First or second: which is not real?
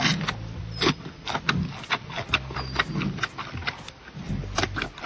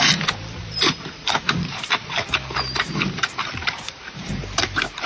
second